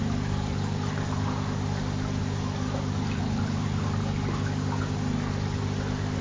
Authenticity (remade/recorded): recorded